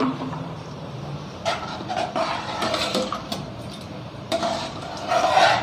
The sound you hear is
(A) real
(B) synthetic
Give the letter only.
B